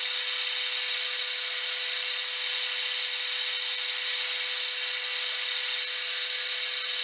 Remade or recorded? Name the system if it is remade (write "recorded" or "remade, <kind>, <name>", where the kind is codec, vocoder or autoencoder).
recorded